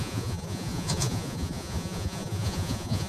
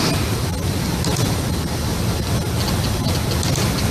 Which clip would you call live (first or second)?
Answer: second